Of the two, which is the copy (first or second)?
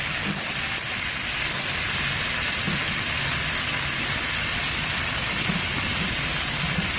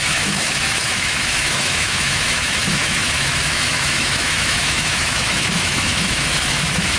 second